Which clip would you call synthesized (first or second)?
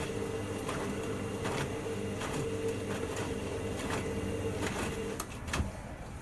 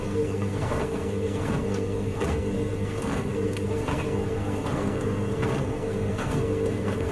second